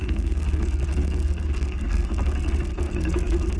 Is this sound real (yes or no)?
no